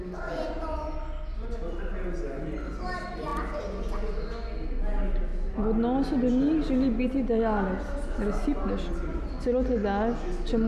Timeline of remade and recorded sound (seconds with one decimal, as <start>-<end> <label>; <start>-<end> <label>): 0.0-10.7 recorded

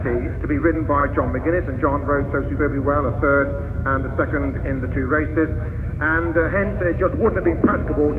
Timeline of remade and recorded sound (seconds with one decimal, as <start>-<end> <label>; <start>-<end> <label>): 0.0-1.0 remade; 1.0-2.6 recorded; 2.6-8.2 remade

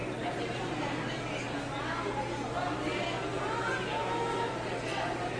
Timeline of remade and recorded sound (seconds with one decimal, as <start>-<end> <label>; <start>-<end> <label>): 0.0-4.0 recorded; 4.0-4.5 remade; 4.5-5.4 recorded

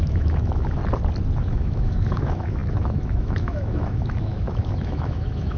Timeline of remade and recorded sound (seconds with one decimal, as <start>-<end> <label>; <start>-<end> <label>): 0.0-0.8 remade; 0.8-1.4 recorded; 1.4-5.6 remade

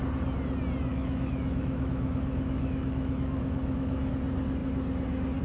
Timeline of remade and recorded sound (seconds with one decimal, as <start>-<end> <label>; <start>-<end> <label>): 0.0-0.9 recorded; 0.9-4.1 remade; 4.1-5.4 recorded

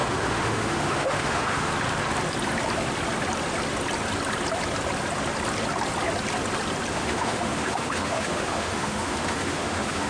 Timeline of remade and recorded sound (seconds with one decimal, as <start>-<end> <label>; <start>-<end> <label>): 0.0-1.7 remade; 1.7-6.9 recorded; 6.9-10.1 remade

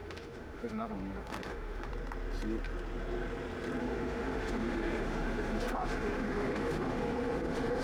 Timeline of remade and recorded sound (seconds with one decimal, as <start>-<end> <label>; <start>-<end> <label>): 0.0-1.9 remade; 1.9-3.8 recorded; 3.8-7.8 remade

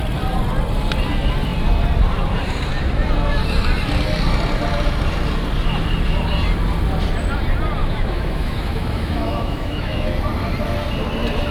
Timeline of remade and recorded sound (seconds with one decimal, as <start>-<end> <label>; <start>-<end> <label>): 0.0-7.8 recorded; 7.8-10.1 remade; 10.1-11.5 recorded